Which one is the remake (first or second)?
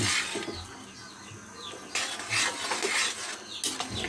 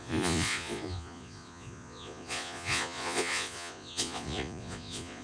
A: second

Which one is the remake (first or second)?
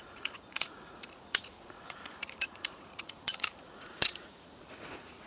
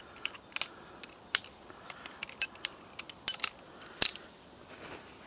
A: first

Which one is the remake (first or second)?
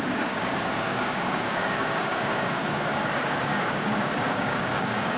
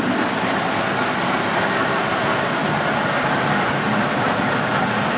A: first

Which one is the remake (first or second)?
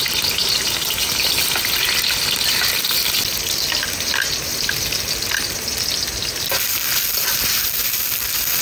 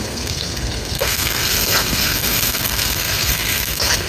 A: second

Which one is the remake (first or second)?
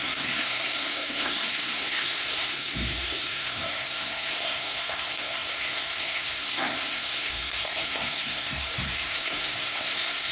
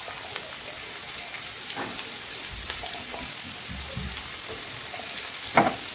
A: first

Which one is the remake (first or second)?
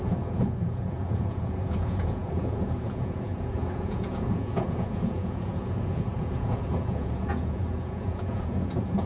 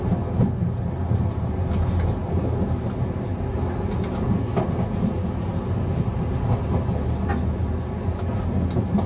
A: first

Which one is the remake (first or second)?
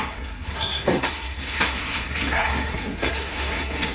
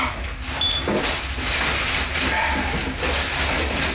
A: first